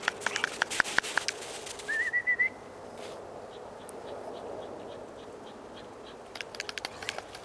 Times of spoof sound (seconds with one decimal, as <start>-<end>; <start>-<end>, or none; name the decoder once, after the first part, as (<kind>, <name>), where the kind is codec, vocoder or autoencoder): none